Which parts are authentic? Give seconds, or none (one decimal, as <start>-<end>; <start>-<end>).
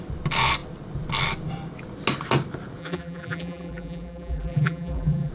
0.0-2.8